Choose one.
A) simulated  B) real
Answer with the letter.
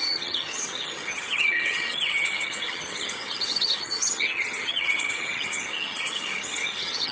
A